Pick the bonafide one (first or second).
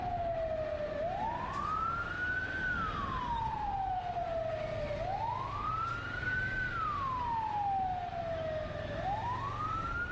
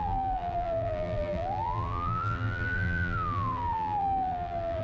first